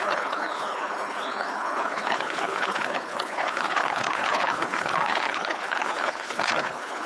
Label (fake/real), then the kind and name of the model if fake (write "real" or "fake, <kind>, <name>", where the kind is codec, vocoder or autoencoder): fake, codec, HILCodec